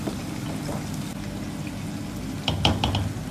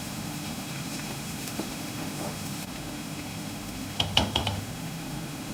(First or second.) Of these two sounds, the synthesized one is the second